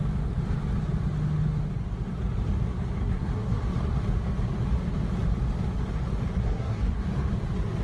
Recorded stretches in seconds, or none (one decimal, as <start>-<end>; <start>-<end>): 0.0-3.0; 3.6-6.4; 7.0-7.8